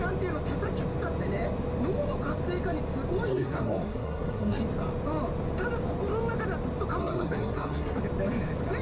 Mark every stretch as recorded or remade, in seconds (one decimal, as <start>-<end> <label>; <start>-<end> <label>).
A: 0.0-3.3 recorded; 3.3-4.6 remade; 4.6-7.0 recorded; 7.0-8.0 remade; 8.0-8.8 recorded